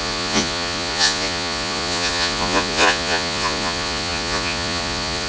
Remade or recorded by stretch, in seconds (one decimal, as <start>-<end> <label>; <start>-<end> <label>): 0.0-5.3 remade